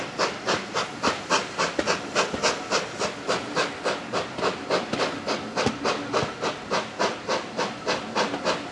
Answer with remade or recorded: recorded